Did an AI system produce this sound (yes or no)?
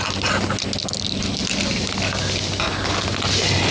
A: no